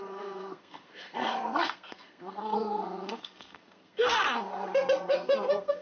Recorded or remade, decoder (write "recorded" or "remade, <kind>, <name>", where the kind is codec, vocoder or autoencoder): remade, codec, SNAC